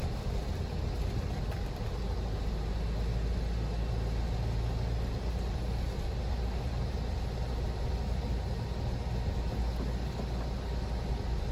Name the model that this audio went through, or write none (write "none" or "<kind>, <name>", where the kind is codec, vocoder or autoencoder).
none